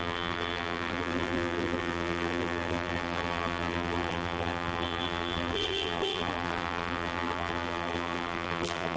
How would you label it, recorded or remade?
remade